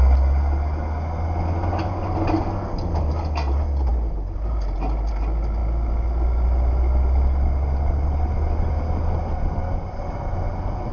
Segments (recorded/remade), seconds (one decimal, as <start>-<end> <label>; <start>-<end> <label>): 0.0-10.9 recorded